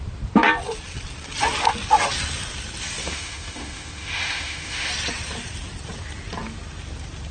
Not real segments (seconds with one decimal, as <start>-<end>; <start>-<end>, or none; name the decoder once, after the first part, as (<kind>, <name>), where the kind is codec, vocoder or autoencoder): 3.0-4.9 (autoencoder, DAC-VAE)